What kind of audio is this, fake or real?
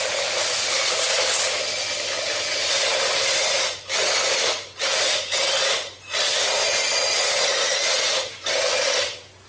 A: real